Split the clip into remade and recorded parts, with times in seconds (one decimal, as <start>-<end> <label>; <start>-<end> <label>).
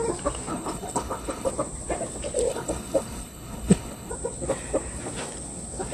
0.0-0.5 recorded; 0.5-1.5 remade; 1.5-2.5 recorded; 2.5-4.1 remade; 4.1-5.9 recorded